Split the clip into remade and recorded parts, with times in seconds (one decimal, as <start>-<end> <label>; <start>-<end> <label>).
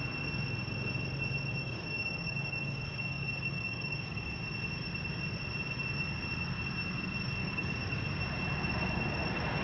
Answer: 0.0-1.6 recorded; 1.6-4.4 remade; 4.4-7.4 recorded; 7.4-8.0 remade; 8.0-9.6 recorded